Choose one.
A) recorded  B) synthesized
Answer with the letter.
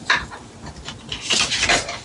A